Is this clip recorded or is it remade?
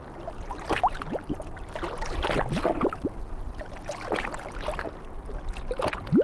recorded